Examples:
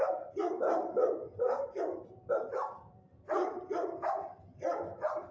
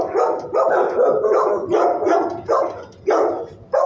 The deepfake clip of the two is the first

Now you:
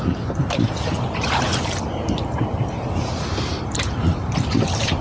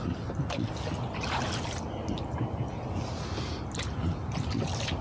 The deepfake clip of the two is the first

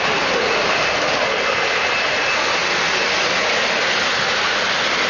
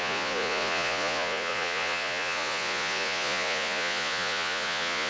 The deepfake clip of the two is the second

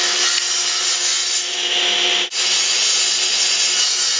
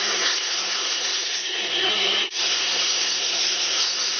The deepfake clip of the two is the second